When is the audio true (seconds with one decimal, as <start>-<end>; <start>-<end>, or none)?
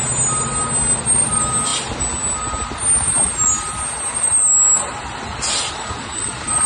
0.0-6.7